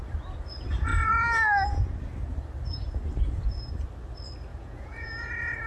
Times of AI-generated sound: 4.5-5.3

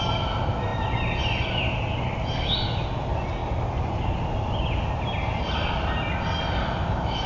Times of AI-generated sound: 6.6-7.3

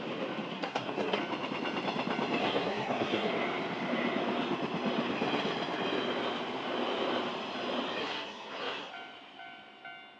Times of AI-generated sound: 0.5-1.2; 2.4-3.3; 8.0-8.9